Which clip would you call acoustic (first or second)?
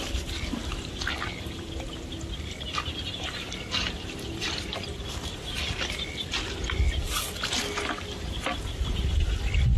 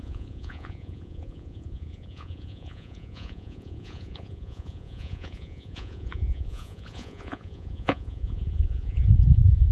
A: first